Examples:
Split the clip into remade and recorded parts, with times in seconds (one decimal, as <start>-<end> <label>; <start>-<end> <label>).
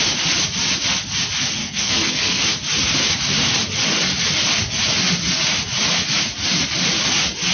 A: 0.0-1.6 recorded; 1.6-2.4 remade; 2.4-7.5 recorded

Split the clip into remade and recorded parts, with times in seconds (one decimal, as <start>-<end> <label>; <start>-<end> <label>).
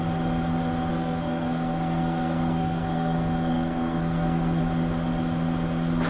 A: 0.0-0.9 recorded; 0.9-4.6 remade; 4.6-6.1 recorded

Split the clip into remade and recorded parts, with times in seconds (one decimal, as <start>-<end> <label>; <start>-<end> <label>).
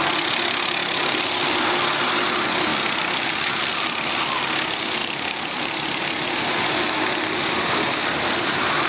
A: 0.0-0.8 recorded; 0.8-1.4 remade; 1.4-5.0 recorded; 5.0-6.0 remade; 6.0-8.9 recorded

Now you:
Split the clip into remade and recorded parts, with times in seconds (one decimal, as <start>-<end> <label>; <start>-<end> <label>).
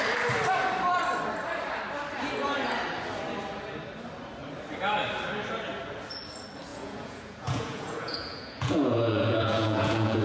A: 0.0-6.7 recorded; 6.7-10.2 remade